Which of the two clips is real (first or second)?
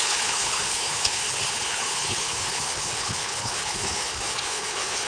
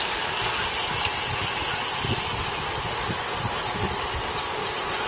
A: second